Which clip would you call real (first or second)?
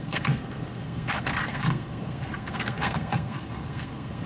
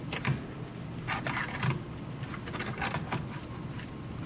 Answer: second